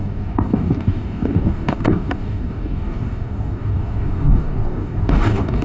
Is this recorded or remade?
remade